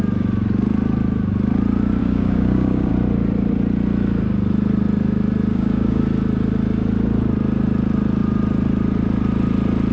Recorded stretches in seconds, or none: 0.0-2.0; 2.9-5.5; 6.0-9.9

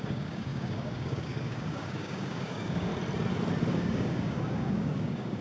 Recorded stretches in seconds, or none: 2.9-3.7